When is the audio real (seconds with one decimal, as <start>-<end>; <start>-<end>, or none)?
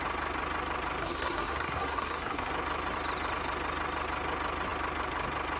0.0-1.0; 2.5-5.6